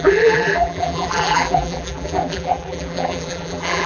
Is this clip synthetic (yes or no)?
yes